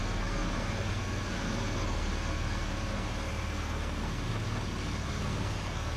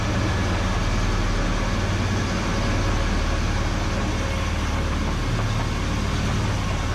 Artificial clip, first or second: first